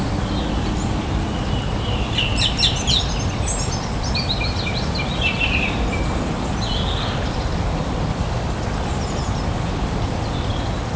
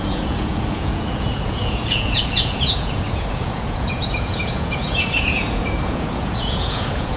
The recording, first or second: first